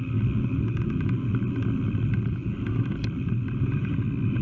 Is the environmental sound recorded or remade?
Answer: recorded